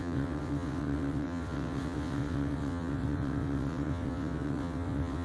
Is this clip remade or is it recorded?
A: remade